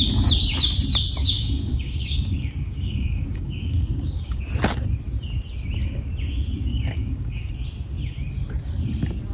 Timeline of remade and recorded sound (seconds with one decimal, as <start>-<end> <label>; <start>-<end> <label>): 0.0-1.2 recorded; 1.2-4.4 remade; 4.4-6.7 recorded; 6.7-7.5 remade; 7.5-9.3 recorded